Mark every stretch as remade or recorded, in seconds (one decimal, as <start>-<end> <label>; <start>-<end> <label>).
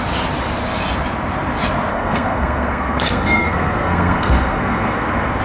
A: 0.0-1.9 recorded; 1.9-5.4 remade